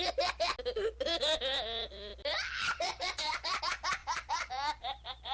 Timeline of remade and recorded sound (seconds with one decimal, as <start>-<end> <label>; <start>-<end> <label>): 0.0-2.1 recorded; 2.1-3.6 remade; 3.6-4.0 recorded; 4.0-4.5 remade; 4.5-5.3 recorded

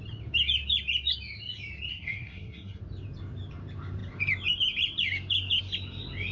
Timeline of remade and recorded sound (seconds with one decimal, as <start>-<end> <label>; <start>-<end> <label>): 0.0-1.9 recorded; 1.9-2.8 remade; 2.8-6.3 recorded

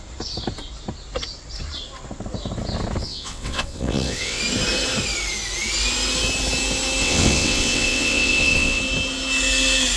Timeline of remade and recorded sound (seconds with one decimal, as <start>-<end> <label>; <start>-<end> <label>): 0.0-3.0 recorded; 3.0-4.4 remade; 4.4-7.0 recorded; 7.0-8.8 remade; 8.8-10.0 recorded

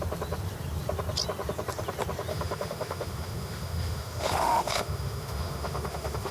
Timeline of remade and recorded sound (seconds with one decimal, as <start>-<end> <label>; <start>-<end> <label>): 0.0-2.3 recorded; 2.3-6.3 remade

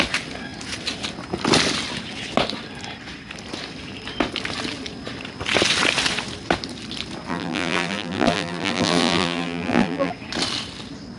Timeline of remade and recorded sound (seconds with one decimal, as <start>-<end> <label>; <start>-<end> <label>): 0.0-7.3 recorded; 7.3-10.1 remade; 10.1-11.2 recorded

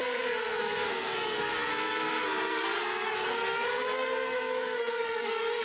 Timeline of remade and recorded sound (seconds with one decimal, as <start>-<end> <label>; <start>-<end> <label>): 0.0-5.6 remade

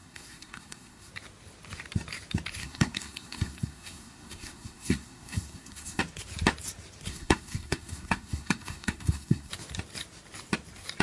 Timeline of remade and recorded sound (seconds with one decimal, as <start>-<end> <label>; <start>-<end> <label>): 0.0-1.1 remade; 1.1-2.6 recorded; 2.6-6.0 remade; 6.0-7.1 recorded; 7.1-9.5 remade; 9.5-11.0 recorded

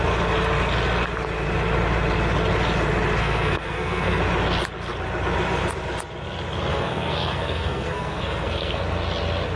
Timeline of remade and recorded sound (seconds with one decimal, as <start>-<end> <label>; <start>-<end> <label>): 0.0-3.2 recorded; 3.2-4.2 remade; 4.2-6.7 recorded; 6.7-8.8 remade; 8.8-9.6 recorded